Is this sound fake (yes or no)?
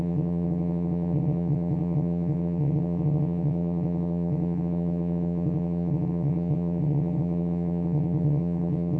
yes